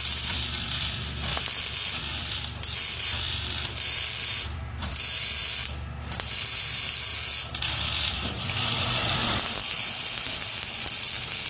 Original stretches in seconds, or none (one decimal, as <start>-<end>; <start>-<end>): 1.3-2.0; 5.6-6.3; 7.1-7.6